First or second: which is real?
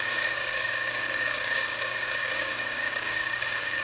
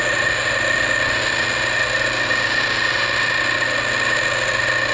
second